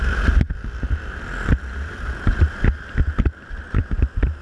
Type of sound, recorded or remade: recorded